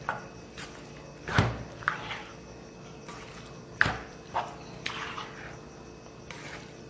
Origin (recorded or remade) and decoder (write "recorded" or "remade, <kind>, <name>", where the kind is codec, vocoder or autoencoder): recorded